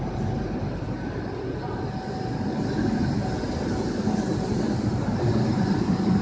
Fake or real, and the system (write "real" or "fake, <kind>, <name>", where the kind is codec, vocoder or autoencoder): real